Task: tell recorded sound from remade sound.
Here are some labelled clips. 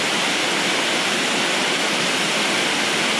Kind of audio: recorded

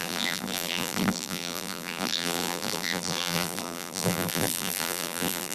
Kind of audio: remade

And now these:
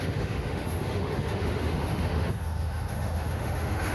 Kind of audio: remade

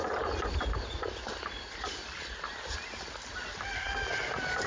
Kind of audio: recorded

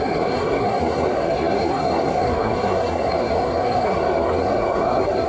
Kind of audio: remade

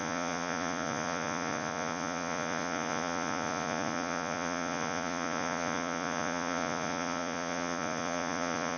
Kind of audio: remade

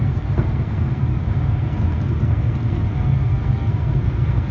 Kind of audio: remade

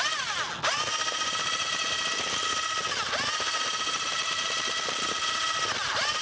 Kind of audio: recorded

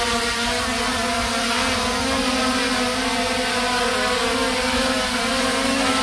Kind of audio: recorded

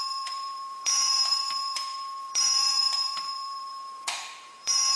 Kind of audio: remade